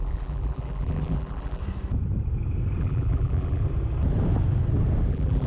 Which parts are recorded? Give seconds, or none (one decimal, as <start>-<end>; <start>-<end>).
1.6-2.8; 3.6-5.1